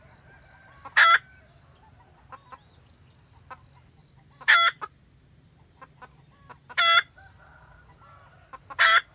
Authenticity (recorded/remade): recorded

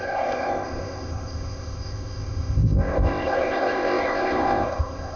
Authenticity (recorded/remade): remade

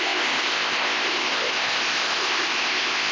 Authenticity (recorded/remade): remade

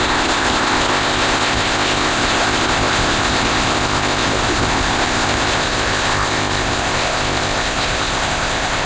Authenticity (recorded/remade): remade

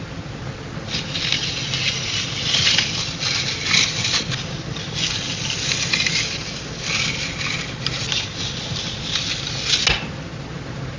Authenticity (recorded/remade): recorded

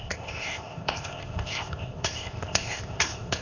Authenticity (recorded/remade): remade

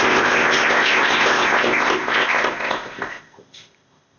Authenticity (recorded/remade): remade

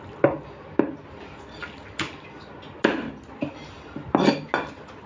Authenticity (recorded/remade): recorded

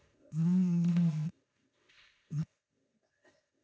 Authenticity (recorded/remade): remade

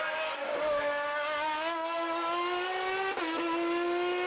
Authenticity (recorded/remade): recorded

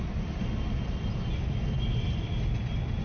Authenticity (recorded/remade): recorded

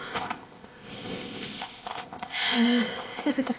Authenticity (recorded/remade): remade